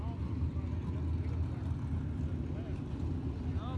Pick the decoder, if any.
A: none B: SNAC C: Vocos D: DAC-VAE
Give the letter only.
A